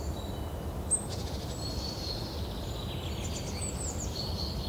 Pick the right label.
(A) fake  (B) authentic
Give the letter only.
B